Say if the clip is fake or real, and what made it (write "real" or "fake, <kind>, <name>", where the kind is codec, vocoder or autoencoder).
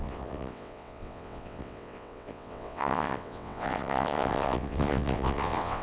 fake, vocoder, WaveNeXt